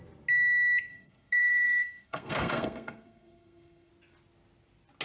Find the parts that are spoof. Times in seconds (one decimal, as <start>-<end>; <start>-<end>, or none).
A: 0.9-3.9